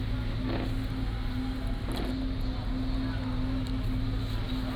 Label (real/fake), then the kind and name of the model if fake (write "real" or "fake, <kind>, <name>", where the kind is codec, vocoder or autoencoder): real